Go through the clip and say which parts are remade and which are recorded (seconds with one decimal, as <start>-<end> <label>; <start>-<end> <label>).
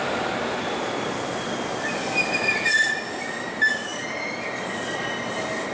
0.0-5.7 recorded